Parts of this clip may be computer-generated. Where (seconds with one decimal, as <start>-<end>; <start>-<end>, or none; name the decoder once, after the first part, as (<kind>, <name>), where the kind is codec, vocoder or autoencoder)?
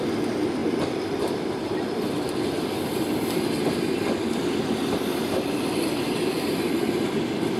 none